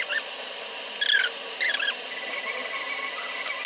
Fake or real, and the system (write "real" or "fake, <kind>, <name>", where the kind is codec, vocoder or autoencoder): real